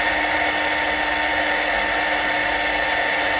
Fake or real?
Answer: real